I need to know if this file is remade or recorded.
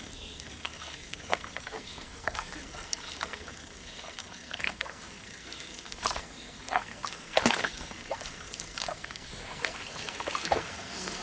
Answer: remade